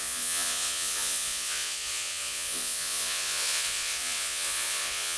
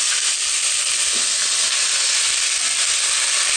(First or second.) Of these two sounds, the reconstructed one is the first